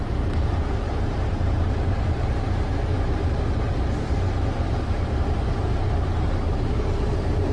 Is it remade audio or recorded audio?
remade